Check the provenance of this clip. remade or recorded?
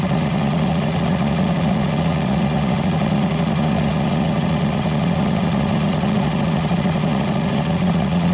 remade